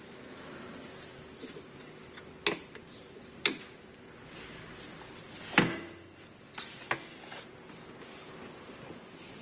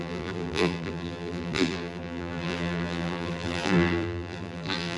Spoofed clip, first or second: second